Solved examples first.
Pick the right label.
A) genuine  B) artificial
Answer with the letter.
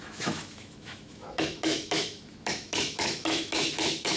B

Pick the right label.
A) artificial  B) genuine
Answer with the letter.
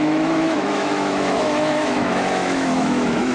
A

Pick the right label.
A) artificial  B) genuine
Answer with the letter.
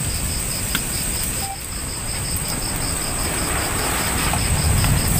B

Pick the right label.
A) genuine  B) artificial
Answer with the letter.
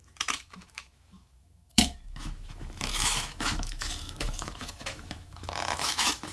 B